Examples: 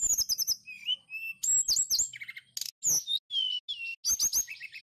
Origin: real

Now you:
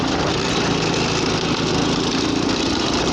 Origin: real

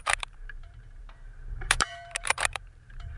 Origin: fake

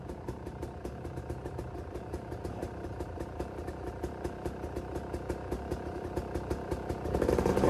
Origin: fake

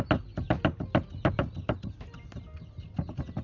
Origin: real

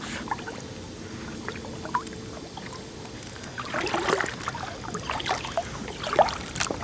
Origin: real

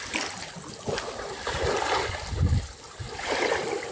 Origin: real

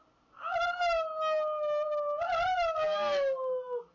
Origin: real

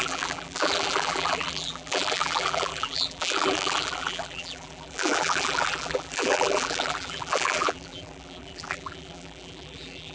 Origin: fake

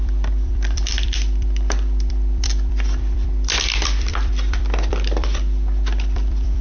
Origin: fake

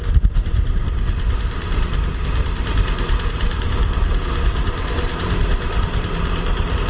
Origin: fake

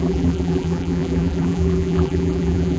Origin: fake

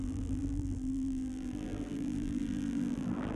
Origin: fake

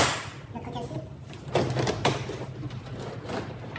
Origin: real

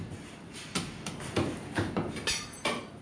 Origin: fake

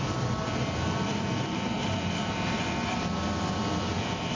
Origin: fake